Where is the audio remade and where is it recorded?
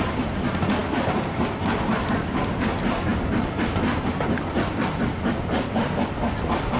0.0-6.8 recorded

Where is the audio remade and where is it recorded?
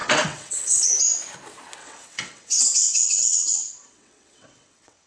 0.0-0.9 remade; 0.9-1.8 recorded; 1.8-5.1 remade